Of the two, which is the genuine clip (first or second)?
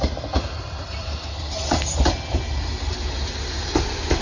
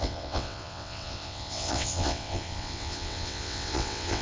first